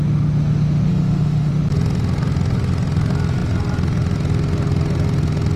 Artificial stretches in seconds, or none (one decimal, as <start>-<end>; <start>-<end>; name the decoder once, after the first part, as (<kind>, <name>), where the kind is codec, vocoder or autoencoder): 0.9-1.5 (autoencoder, DAC-VAE)